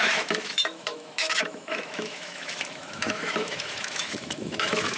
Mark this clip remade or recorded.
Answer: remade